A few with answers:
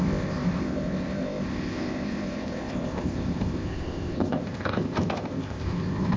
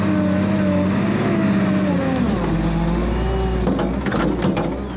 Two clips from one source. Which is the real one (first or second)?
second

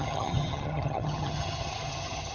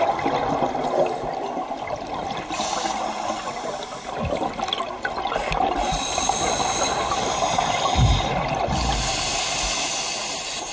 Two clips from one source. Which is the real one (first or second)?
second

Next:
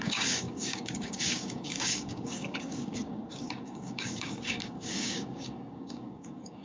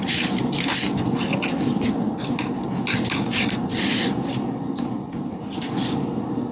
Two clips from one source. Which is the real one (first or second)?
second